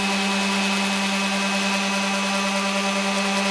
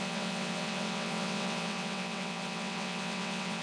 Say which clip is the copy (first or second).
second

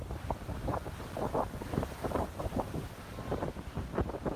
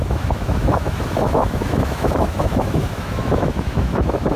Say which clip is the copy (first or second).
second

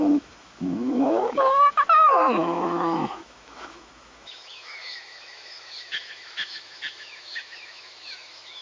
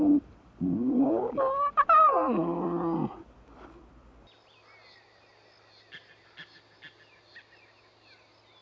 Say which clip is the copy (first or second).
first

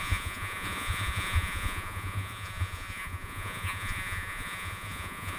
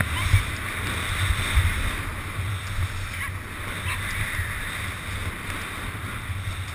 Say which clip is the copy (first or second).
first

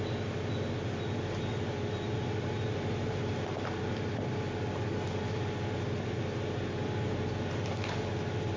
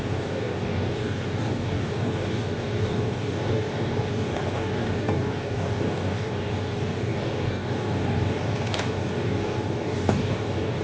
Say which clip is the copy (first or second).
second